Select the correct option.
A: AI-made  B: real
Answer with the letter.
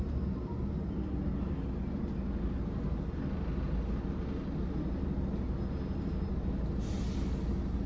B